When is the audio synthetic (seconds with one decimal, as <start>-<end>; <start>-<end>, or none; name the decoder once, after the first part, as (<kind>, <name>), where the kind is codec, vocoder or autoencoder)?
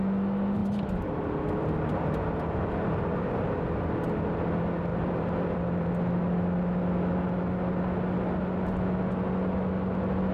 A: 0.6-1.9 (vocoder, BigVGAN v2); 4.9-5.9